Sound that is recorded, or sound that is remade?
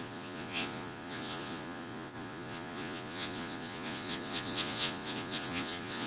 remade